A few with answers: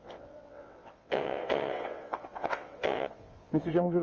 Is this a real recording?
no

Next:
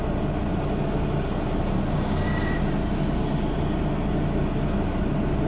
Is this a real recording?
yes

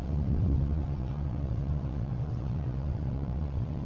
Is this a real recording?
no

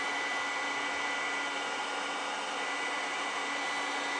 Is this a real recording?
yes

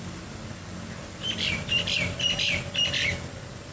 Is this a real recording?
yes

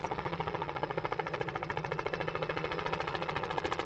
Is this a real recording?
no